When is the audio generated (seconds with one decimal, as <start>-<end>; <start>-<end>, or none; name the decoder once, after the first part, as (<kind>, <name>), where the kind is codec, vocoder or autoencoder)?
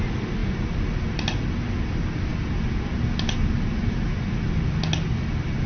none